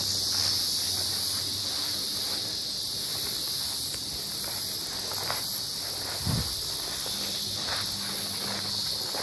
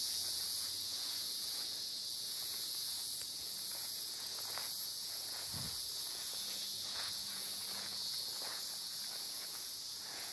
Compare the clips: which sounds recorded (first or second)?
first